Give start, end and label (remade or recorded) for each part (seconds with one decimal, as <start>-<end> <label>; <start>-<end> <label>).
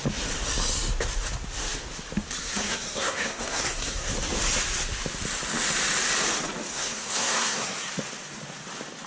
0.0-2.4 recorded; 2.4-4.1 remade; 4.1-6.7 recorded; 6.7-7.9 remade; 7.9-9.1 recorded